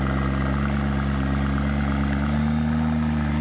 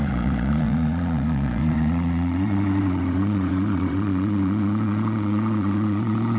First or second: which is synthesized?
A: second